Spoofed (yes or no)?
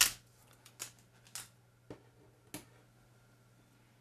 no